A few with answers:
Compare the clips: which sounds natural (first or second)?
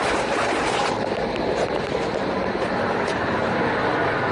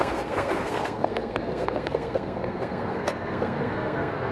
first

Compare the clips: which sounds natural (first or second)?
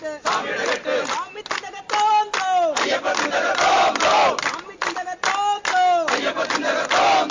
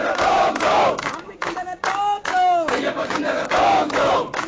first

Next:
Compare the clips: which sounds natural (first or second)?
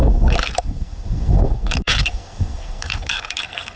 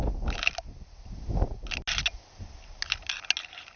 second